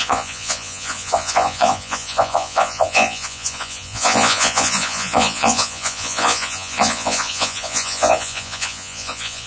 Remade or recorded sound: remade